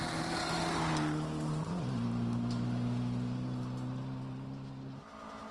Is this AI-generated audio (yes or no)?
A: no